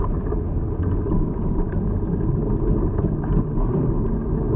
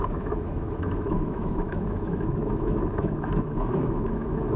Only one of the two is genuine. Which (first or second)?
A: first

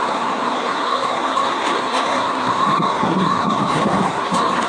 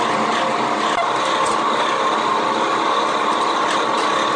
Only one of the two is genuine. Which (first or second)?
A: second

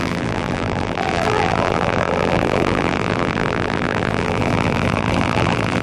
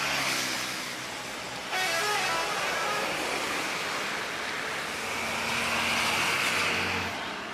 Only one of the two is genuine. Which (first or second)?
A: second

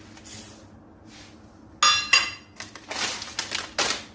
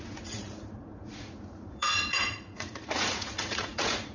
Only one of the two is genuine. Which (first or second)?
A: first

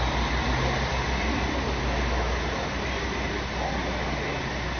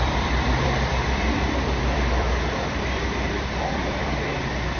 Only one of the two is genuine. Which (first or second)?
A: first